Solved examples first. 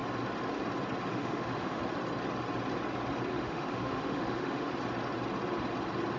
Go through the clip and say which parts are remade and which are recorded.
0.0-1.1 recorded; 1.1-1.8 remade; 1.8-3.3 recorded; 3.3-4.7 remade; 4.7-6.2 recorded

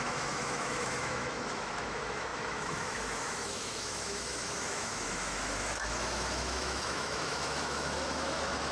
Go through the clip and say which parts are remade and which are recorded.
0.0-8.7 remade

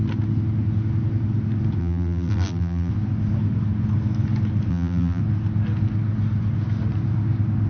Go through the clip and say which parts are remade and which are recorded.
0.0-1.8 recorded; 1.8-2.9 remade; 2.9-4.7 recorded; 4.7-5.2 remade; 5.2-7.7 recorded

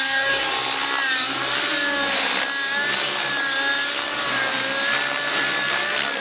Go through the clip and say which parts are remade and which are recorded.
0.0-6.2 recorded

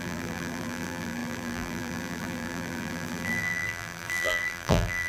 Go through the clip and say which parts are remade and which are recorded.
0.0-5.1 remade

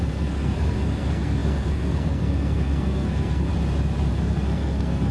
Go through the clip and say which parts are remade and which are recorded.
0.0-3.5 remade; 3.5-4.1 recorded; 4.1-5.1 remade

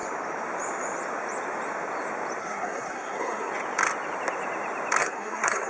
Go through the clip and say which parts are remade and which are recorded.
0.0-2.4 recorded; 2.4-3.5 remade; 3.5-5.0 recorded; 5.0-5.7 remade

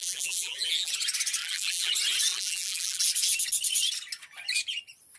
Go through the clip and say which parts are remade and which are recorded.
0.0-0.9 remade; 0.9-1.4 recorded; 1.4-1.9 remade; 1.9-2.3 recorded; 2.3-3.0 remade; 3.0-5.2 recorded